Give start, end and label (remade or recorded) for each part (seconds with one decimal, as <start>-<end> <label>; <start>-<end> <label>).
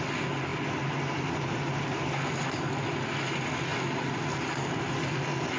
0.0-5.6 recorded